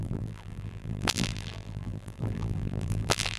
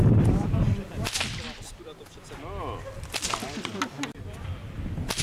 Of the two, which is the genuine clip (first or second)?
second